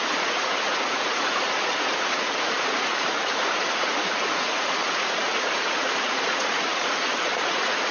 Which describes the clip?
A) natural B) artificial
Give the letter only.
B